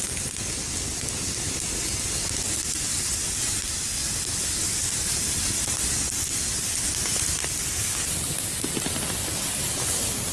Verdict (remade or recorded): recorded